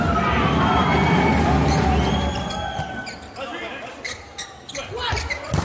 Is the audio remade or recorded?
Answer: recorded